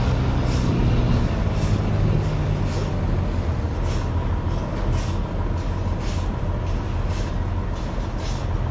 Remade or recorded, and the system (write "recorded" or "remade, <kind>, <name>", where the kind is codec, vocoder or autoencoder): recorded